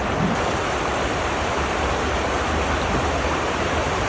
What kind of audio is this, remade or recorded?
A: recorded